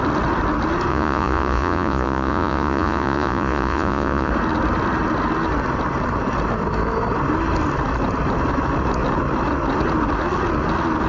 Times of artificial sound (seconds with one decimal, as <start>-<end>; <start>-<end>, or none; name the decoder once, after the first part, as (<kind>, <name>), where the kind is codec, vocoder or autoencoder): 0.9-4.3 (vocoder, Vocos)